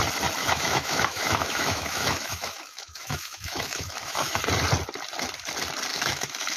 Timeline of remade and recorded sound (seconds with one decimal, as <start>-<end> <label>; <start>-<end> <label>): 0.0-0.4 recorded; 0.4-4.4 remade; 4.4-5.9 recorded; 5.9-6.6 remade